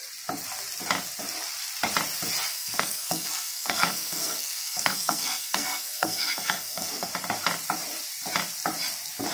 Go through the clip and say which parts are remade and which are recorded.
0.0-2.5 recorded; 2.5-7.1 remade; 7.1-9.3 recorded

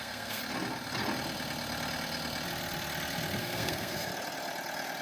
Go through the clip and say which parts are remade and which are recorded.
0.0-0.4 remade; 0.4-3.4 recorded; 3.4-4.1 remade; 4.1-5.0 recorded

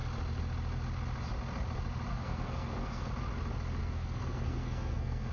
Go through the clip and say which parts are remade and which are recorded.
0.0-2.1 recorded; 2.1-3.1 remade; 3.1-3.8 recorded; 3.8-5.3 remade

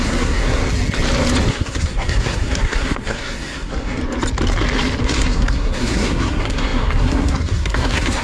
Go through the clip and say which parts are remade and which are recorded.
0.0-0.6 remade; 0.6-1.5 recorded; 1.5-4.0 remade; 4.0-5.0 recorded; 5.0-8.2 remade